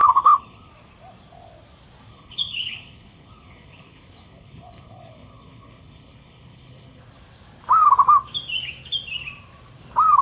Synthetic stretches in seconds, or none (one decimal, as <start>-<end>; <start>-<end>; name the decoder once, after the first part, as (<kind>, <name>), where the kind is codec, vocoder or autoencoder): 0.0-0.7 (codec, HILCodec); 2.1-7.0